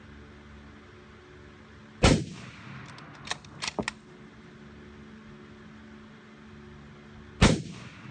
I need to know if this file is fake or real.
real